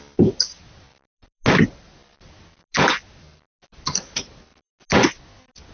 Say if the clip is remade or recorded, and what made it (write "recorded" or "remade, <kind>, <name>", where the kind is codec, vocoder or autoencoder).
recorded